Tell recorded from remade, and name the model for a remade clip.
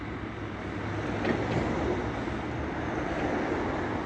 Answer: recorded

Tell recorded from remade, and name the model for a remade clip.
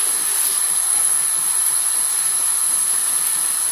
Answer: recorded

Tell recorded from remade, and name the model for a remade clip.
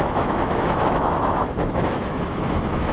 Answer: remade, autoencoder, DAC-VAE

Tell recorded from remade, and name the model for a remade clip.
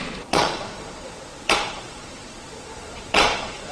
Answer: remade, vocoder, Vocos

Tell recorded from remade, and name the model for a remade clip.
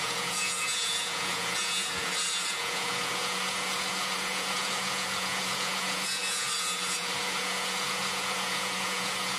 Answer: remade, vocoder, Vocos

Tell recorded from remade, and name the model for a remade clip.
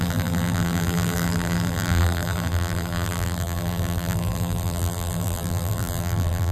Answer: remade, vocoder, BigVGAN v2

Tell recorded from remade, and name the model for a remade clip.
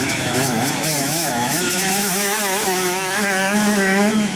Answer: remade, autoencoder, DAC-VAE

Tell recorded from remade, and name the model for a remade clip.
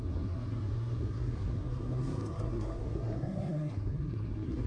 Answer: remade, codec, SNAC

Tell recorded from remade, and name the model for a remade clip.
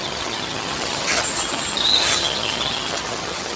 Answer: remade, vocoder, HiFi-GAN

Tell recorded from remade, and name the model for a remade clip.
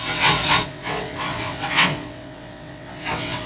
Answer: remade, vocoder, WaveNeXt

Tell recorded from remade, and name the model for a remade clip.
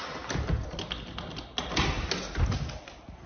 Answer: recorded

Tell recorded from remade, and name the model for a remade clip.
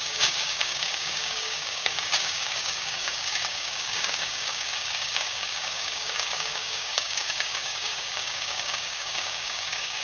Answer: remade, codec, DAC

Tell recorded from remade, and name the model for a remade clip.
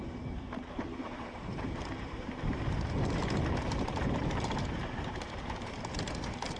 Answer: remade, vocoder, BigVGAN v2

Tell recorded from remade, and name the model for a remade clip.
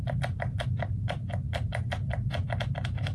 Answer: remade, vocoder, BigVGAN v2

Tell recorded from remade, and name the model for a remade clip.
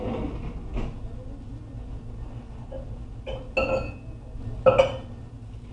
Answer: recorded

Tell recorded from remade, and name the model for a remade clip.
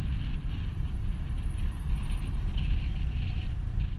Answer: recorded